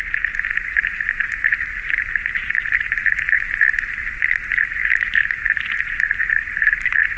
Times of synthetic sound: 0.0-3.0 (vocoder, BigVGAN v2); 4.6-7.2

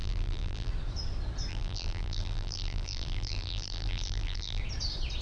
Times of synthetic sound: 0.0-0.7 (vocoder, BigVGAN v2); 1.5-4.6

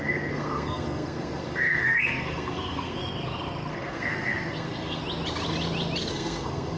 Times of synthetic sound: 0.0-3.0 (codec, SNAC); 3.7-5.0; 6.1-6.8

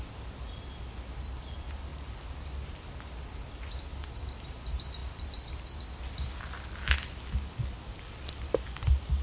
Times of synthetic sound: none

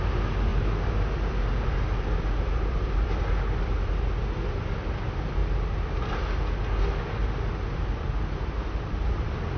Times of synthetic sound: 0.5-3.9 (vocoder, BigVGAN v2); 5.4-6.1; 7.2-9.0

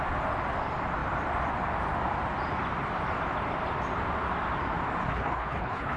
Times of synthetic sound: 5.0-6.0 (codec, HILCodec)